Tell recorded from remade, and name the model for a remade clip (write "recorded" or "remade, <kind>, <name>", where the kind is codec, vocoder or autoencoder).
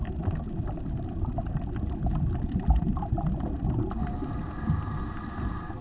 recorded